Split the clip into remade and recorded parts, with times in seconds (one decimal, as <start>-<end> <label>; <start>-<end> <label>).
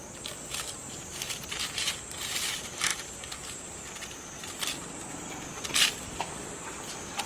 0.0-7.3 recorded